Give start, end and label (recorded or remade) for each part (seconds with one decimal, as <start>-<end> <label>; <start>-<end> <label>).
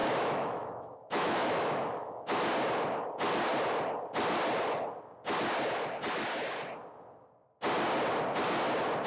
0.0-2.5 remade; 2.5-9.1 recorded